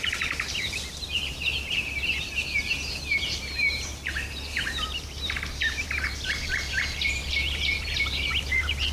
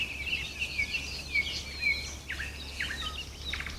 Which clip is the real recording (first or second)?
second